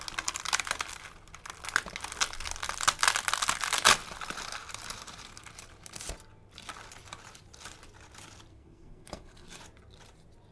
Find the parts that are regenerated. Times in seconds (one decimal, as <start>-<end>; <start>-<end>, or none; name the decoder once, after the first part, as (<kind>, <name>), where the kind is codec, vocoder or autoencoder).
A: 8.5-9.6 (codec, SNAC)